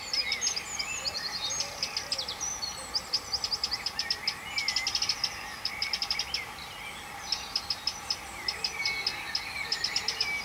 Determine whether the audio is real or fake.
real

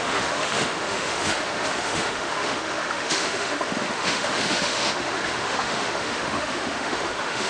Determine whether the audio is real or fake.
fake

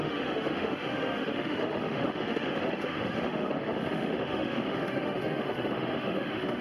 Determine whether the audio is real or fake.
fake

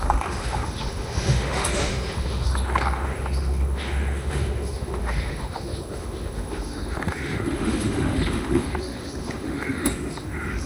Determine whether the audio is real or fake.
fake